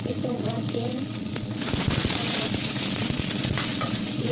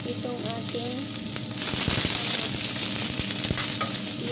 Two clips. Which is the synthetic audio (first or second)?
first